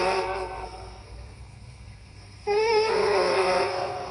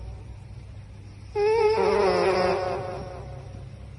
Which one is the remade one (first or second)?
first